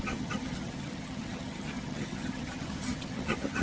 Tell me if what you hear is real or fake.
fake